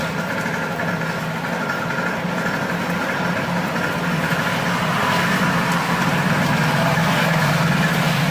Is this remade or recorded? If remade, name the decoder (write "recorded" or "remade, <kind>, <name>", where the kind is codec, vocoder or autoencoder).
recorded